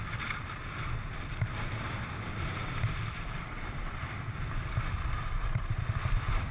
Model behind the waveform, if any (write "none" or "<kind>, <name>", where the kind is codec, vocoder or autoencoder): vocoder, BigVGAN v2